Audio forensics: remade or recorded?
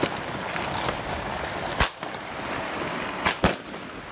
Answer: recorded